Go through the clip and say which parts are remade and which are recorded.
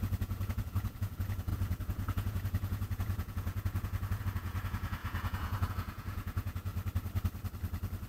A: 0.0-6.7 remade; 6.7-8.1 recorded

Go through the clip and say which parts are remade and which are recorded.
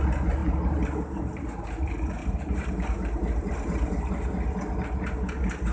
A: 0.0-2.2 recorded; 2.2-4.1 remade; 4.1-5.7 recorded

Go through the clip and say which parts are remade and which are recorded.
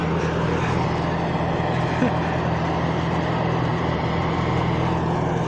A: 0.0-3.7 recorded; 3.7-4.3 remade; 4.3-5.5 recorded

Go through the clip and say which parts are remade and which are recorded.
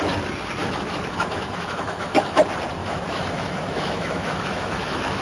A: 0.0-0.6 recorded; 0.6-2.4 remade; 2.4-2.8 recorded; 2.8-5.2 remade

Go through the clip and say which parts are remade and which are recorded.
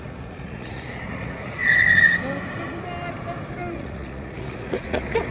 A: 0.0-1.6 remade; 1.6-3.7 recorded; 3.7-5.3 remade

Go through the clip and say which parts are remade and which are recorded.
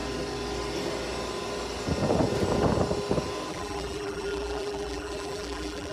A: 0.0-3.5 recorded; 3.5-5.9 remade